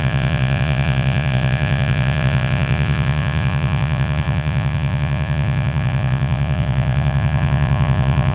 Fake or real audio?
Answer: fake